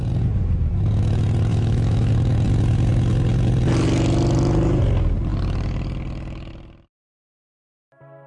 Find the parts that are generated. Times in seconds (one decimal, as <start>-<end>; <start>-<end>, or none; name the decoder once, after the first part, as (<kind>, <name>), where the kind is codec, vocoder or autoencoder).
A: 1.5-2.1 (autoencoder, DAC-VAE)

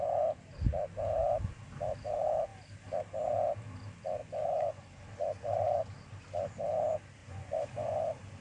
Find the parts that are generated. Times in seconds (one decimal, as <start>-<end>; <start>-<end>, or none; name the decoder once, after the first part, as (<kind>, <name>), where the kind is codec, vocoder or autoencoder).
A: 4.2-4.9 (vocoder, Vocos); 7.2-8.0

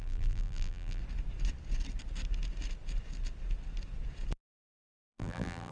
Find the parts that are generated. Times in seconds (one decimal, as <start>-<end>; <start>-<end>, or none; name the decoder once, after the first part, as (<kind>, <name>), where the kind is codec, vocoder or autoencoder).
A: 0.0-1.0 (vocoder, BigVGAN v2); 4.4-5.7

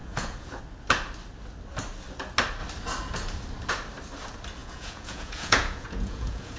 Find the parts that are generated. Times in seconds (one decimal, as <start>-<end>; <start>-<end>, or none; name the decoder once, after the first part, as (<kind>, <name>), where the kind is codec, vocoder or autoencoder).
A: 0.0-0.6 (vocoder, Vocos); 4.6-6.6

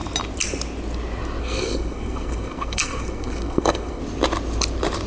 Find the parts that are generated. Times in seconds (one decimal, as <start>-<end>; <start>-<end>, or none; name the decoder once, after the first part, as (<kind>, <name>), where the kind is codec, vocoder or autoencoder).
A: 1.4-4.0 (codec, SNAC)